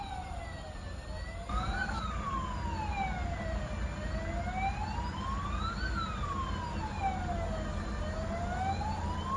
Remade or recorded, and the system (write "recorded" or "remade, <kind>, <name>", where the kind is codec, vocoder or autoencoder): recorded